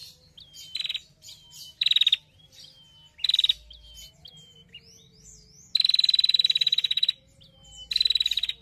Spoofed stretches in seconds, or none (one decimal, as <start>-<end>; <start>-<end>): none